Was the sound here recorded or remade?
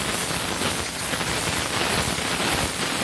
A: recorded